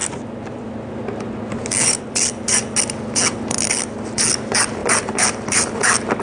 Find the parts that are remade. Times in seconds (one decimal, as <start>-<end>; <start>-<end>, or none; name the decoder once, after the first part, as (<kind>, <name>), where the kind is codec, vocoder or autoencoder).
4.8-5.8 (vocoder, BigVGAN v2)